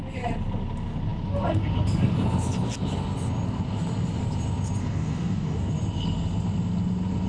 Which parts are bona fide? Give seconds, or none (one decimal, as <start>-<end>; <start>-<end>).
0.0-4.8; 5.7-7.3